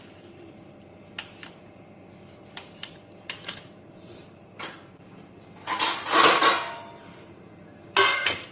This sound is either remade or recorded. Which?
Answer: remade